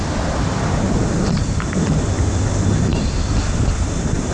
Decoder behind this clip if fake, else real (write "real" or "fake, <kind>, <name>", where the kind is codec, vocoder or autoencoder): real